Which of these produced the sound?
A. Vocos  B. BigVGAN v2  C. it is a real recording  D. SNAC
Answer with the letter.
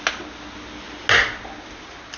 C